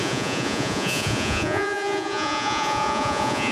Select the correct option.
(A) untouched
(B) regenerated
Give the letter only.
B